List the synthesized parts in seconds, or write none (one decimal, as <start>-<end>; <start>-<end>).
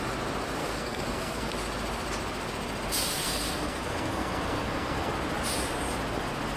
0.6-1.5; 3.1-5.1